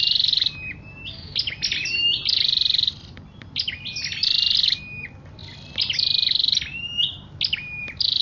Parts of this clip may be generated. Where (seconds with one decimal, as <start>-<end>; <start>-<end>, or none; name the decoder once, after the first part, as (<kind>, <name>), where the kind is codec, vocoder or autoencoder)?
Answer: none